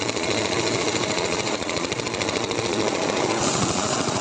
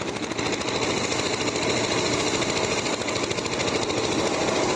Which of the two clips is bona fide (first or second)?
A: second